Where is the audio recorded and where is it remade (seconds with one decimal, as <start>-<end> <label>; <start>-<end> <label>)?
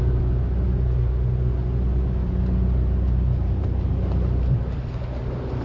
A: 0.0-3.4 recorded; 3.4-3.9 remade; 3.9-5.6 recorded